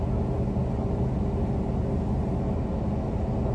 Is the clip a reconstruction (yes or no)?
no